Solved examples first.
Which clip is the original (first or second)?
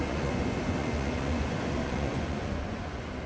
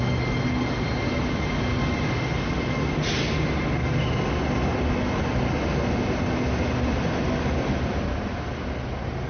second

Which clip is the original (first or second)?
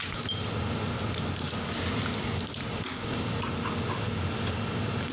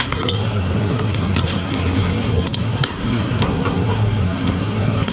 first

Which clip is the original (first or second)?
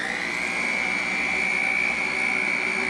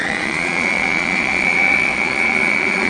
first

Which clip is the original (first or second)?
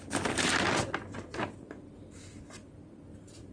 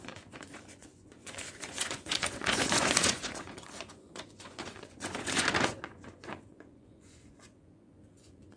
first